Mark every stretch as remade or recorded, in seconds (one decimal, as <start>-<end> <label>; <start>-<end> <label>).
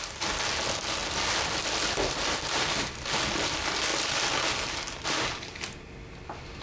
0.0-1.0 recorded; 1.0-1.6 remade; 1.6-6.6 recorded